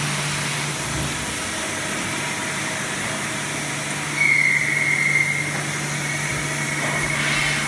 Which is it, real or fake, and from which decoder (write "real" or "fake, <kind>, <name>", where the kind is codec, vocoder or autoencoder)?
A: real